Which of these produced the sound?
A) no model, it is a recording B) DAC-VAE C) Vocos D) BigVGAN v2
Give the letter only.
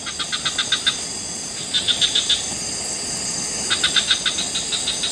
A